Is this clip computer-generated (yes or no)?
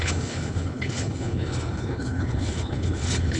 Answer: yes